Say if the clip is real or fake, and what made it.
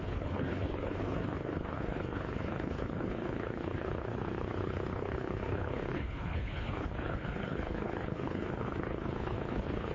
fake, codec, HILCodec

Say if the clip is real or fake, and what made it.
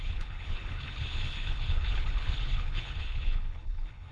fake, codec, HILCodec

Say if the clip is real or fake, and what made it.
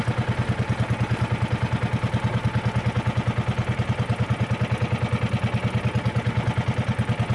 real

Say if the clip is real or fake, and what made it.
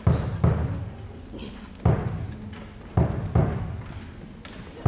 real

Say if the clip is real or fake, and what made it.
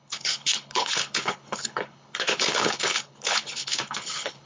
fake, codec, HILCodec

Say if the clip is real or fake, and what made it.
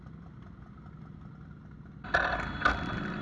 real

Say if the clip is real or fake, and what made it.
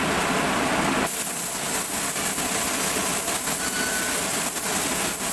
real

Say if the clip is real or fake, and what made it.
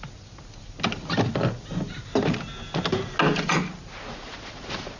real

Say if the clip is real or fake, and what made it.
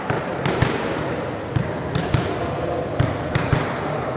real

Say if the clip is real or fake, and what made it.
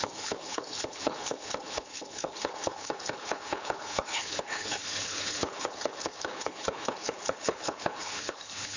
fake, codec, HILCodec